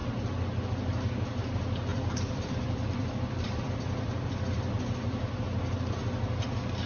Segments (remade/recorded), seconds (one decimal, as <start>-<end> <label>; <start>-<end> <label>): 0.0-1.9 recorded; 1.9-4.8 remade; 4.8-6.9 recorded